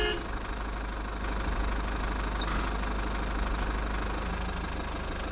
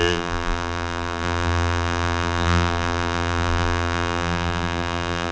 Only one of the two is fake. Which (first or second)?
second